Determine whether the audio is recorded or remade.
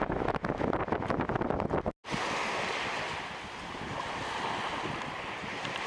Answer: recorded